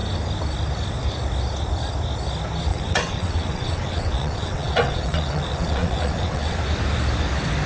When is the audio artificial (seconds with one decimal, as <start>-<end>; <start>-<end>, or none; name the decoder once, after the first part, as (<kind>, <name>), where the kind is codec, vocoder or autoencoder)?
2.7-6.6 (vocoder, WaveNeXt)